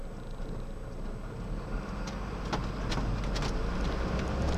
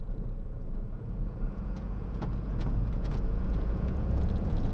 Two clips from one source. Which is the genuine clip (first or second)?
first